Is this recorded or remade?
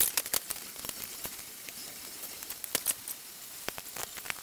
recorded